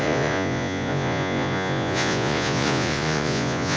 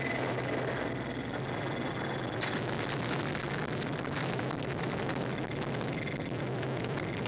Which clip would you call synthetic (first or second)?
first